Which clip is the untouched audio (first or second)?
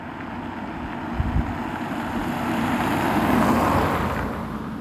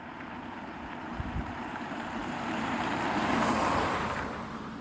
first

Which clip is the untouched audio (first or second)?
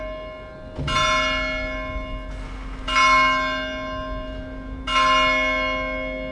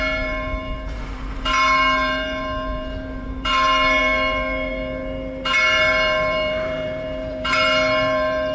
first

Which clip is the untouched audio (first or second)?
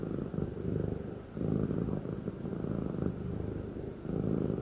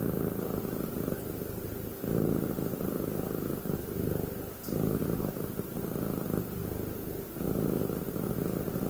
second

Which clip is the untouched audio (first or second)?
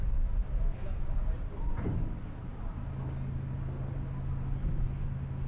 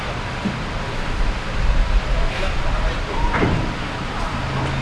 first